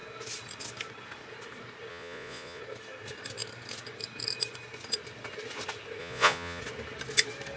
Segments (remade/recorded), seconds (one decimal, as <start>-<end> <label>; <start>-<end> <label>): 0.0-1.9 recorded; 1.9-2.6 remade; 2.6-6.0 recorded; 6.0-6.6 remade; 6.6-7.6 recorded